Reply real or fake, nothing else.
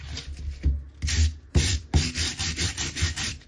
real